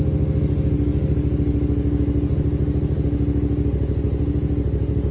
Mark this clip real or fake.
real